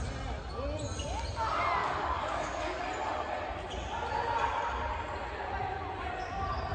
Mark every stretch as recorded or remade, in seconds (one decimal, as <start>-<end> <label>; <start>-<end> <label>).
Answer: 0.0-1.8 recorded; 1.8-2.8 remade; 2.8-6.7 recorded